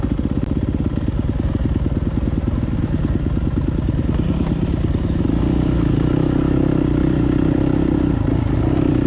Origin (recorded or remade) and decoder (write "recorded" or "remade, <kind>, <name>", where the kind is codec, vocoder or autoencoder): recorded